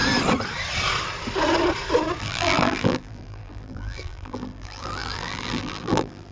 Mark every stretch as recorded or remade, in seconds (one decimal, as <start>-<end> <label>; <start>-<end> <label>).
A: 0.0-2.2 recorded; 2.2-6.3 remade